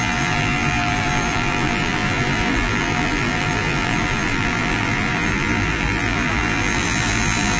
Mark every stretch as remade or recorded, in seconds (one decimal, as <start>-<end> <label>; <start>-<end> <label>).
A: 0.0-7.6 remade